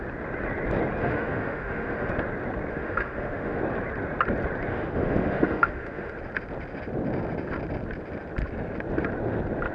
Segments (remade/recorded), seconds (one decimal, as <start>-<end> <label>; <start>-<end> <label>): 0.0-1.0 recorded; 1.0-2.1 remade; 2.1-2.7 recorded; 2.7-3.6 remade; 3.6-4.7 recorded; 4.7-6.1 remade; 6.1-9.7 recorded